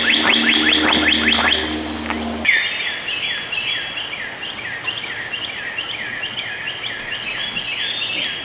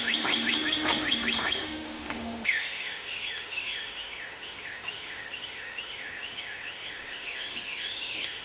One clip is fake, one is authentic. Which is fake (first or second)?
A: second